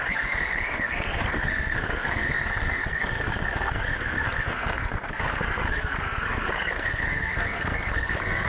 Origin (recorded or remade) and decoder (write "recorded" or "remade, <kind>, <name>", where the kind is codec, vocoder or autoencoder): remade, codec, SNAC